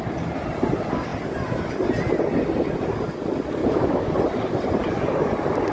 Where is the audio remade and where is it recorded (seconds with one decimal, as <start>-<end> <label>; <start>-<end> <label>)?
0.0-3.6 recorded; 3.6-4.1 remade; 4.1-5.7 recorded